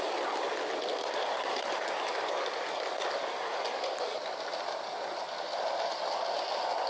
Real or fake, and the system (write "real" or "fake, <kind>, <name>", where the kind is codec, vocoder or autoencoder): real